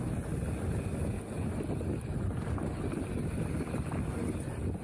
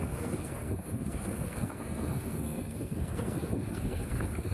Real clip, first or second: first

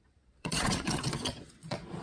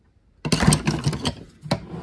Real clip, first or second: second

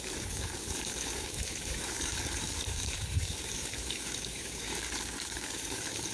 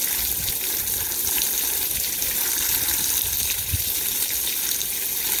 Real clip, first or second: second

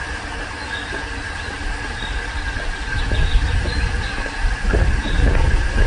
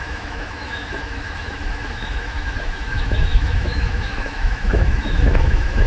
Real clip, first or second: first